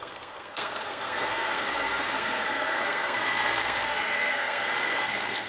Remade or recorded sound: remade